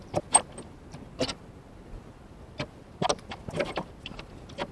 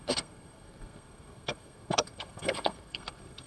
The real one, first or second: first